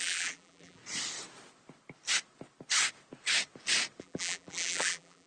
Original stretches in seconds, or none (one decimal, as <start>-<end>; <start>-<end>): 0.8-4.0